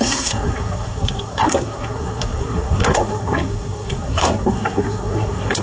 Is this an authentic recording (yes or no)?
no